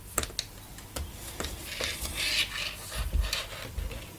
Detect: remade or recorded recorded